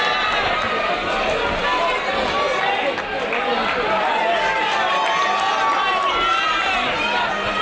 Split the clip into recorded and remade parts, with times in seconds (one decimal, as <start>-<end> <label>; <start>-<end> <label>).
0.0-7.6 recorded